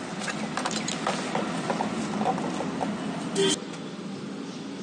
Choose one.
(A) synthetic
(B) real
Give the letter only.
B